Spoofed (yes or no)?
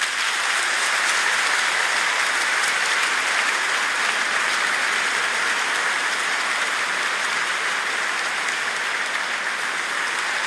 no